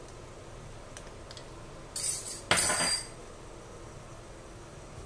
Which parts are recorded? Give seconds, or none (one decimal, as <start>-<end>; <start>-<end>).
0.0-5.1